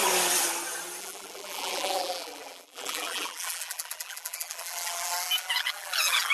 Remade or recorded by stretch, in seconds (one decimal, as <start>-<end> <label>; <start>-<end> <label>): 0.0-1.0 recorded; 1.0-6.3 remade